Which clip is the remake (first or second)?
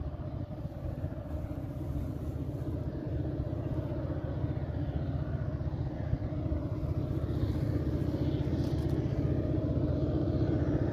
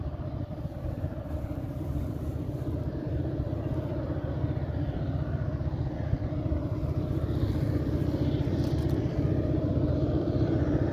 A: second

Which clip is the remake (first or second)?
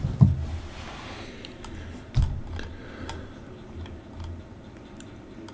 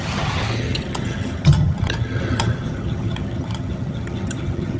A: second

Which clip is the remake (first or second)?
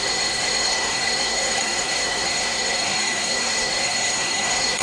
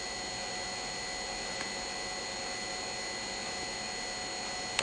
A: first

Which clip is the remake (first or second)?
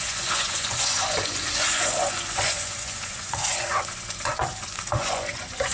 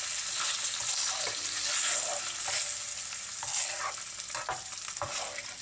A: first